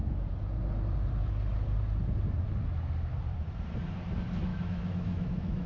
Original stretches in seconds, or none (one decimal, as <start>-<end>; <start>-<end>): 0.0-4.5